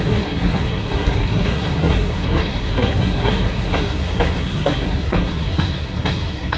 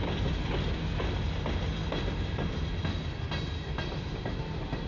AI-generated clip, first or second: first